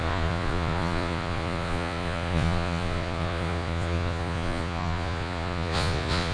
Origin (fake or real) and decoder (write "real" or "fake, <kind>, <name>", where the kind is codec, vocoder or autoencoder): fake, vocoder, Vocos